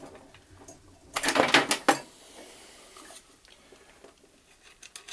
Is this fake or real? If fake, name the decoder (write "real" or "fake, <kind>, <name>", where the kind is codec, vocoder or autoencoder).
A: real